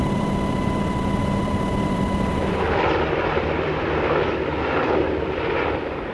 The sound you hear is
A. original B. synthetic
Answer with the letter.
B